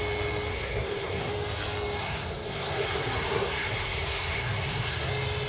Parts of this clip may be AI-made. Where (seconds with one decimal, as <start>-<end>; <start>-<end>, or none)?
0.5-1.3; 2.0-5.1